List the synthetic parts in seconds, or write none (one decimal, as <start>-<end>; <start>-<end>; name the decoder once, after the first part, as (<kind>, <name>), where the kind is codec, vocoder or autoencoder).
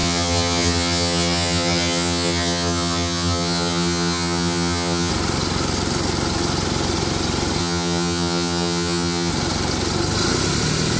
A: 0.0-5.1 (vocoder, HiFi-GAN); 7.6-9.3